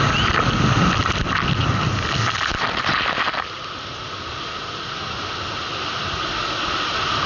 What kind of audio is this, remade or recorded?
recorded